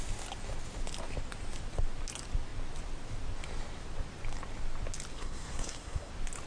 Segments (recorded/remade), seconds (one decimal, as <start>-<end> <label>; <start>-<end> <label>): 0.0-5.1 recorded; 5.1-6.1 remade; 6.1-6.5 recorded